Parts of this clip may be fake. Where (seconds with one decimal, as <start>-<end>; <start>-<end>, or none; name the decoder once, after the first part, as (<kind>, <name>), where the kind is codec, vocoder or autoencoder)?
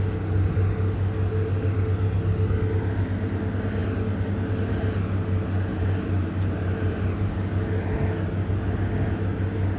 5.7-7.3 (vocoder, BigVGAN v2)